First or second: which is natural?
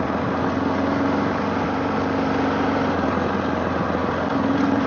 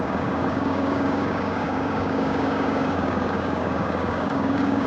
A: first